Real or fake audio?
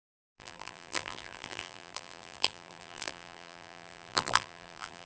fake